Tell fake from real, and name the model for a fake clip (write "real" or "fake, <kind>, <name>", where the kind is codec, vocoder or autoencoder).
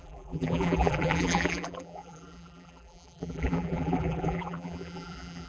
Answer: fake, vocoder, BigVGAN v2